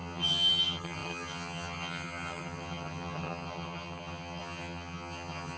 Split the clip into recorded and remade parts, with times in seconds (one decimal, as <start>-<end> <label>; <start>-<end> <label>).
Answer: 0.0-5.6 remade